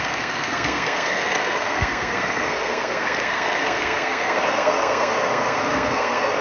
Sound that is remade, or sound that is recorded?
remade